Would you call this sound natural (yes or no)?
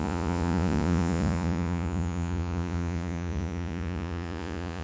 no